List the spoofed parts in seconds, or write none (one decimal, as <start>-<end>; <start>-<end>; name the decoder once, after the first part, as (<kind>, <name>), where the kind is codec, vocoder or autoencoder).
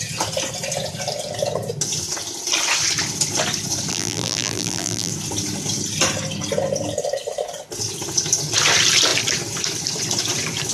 3.9-5.1 (vocoder, BigVGAN v2)